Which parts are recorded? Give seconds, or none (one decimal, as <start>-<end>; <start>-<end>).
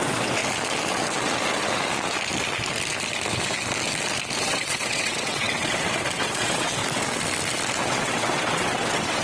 0.4-4.4; 6.8-7.8